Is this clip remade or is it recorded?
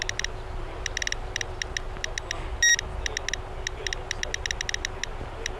recorded